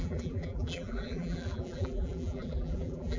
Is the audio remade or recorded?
remade